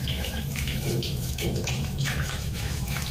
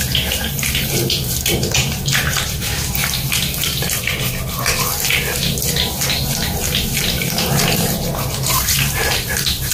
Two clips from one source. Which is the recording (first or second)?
second